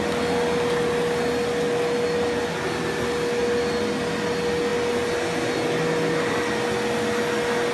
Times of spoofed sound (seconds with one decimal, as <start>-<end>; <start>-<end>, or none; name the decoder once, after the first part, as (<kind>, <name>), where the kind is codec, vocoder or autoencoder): none